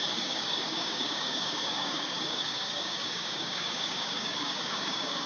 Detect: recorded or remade remade